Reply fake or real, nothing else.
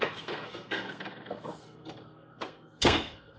fake